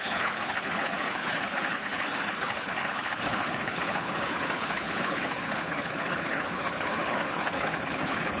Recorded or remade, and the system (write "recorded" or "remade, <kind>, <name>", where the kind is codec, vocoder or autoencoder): remade, codec, HILCodec